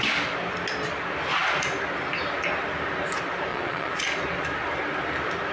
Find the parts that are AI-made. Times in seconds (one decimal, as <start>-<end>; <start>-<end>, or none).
3.5-4.0